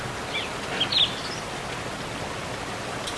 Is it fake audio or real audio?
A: real